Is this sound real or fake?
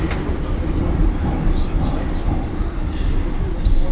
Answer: real